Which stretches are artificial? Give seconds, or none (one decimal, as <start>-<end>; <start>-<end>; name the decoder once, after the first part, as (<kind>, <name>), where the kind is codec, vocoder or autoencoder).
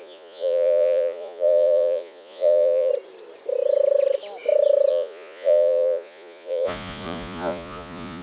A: 0.0-2.9 (vocoder, Vocos); 4.9-8.2